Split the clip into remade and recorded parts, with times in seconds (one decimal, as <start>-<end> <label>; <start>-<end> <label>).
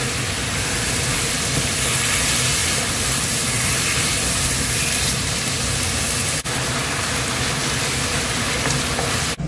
0.0-2.6 recorded; 2.6-5.6 remade; 5.6-9.5 recorded